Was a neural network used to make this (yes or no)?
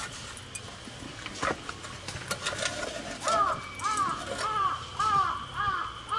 no